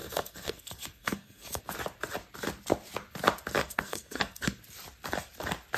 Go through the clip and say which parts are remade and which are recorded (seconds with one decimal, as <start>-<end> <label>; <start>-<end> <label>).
0.0-1.6 remade; 1.6-3.6 recorded; 3.6-4.6 remade; 4.6-5.8 recorded